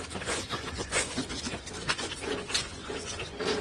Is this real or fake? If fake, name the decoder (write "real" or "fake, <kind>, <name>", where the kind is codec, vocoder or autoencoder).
fake, vocoder, Vocos